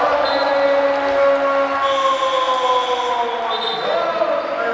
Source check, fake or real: real